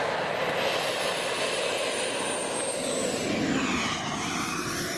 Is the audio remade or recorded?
recorded